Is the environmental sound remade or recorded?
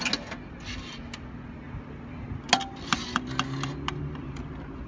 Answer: recorded